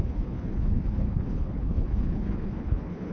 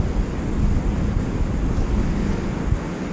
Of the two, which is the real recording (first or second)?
second